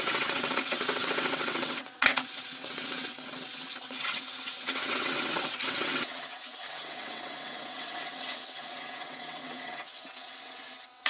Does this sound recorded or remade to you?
remade